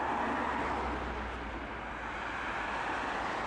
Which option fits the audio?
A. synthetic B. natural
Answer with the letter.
B